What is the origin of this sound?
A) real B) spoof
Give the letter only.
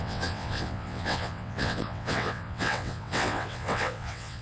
B